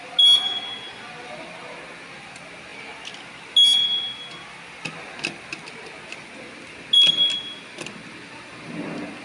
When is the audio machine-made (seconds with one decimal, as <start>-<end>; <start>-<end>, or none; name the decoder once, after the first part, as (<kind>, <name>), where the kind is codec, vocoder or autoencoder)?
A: none